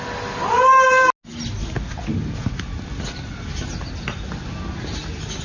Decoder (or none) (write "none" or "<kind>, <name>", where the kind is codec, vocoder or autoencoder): none